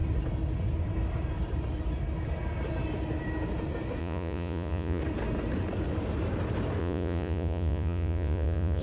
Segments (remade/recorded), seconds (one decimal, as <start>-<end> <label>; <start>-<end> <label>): 0.0-4.0 recorded; 4.0-5.0 remade; 5.0-6.8 recorded; 6.8-8.8 remade